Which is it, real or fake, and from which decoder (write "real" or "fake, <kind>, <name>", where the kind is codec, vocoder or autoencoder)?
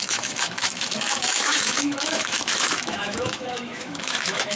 fake, autoencoder, DAC-VAE